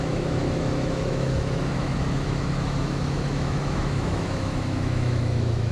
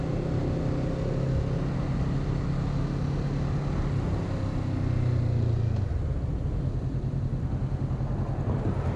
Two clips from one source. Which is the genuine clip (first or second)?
second